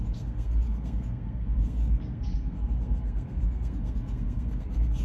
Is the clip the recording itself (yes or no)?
no